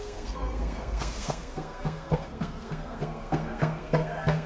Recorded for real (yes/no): no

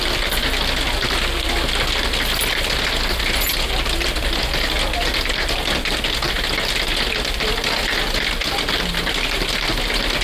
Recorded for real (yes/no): yes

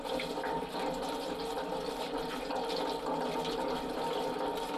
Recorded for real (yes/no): yes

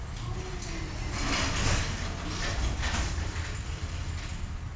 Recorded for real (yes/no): yes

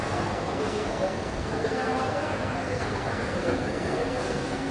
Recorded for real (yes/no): no